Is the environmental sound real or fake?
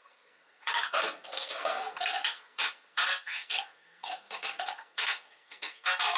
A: fake